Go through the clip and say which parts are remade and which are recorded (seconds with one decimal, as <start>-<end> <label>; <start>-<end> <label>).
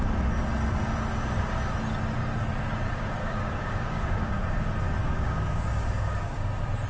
0.0-3.2 recorded; 3.2-4.5 remade; 4.5-5.0 recorded; 5.0-6.5 remade; 6.5-6.9 recorded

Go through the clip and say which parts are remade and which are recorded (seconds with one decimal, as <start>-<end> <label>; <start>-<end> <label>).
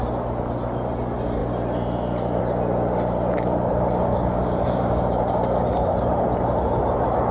0.0-4.1 recorded; 4.1-5.0 remade; 5.0-7.3 recorded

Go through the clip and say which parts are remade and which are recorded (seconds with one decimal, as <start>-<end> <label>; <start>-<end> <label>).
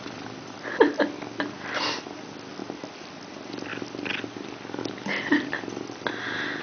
0.0-6.6 recorded